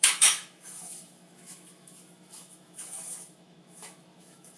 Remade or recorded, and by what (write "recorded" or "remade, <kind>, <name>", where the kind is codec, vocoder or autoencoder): remade, autoencoder, DAC-VAE